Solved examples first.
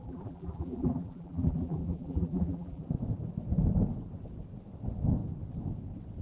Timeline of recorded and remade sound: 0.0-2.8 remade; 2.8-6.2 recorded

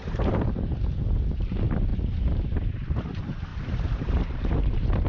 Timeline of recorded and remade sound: 0.0-0.7 remade; 0.7-3.5 recorded; 3.5-5.1 remade

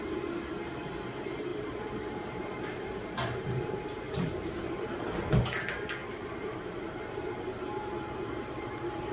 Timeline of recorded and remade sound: 0.0-1.5 recorded; 1.5-5.3 remade; 5.3-6.0 recorded; 6.0-9.1 remade

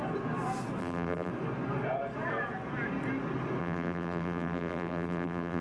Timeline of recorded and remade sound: 0.0-0.8 recorded; 0.8-1.3 remade; 1.3-3.6 recorded; 3.6-5.6 remade

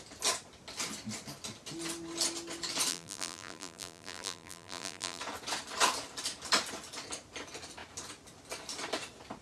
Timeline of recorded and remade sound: 0.0-2.9 recorded; 2.9-5.2 remade; 5.2-9.4 recorded

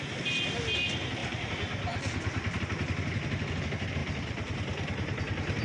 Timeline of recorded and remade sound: 0.0-1.2 recorded; 1.2-2.6 remade; 2.6-4.0 recorded; 4.0-5.6 remade